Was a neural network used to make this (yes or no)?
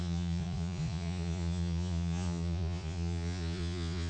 yes